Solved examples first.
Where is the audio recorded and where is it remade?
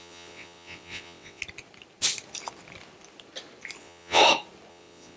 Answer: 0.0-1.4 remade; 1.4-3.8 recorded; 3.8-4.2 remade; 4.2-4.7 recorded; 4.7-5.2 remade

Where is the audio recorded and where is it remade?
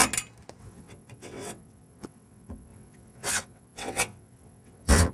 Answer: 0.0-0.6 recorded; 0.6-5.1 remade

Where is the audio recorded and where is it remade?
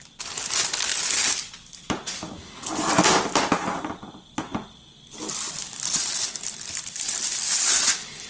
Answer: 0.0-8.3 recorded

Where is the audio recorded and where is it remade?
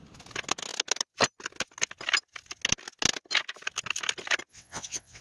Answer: 0.0-4.5 recorded; 4.5-5.2 remade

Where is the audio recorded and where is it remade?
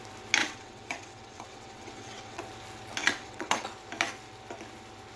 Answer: 0.0-0.4 recorded; 0.4-2.4 remade; 2.4-3.0 recorded; 3.0-3.7 remade; 3.7-5.2 recorded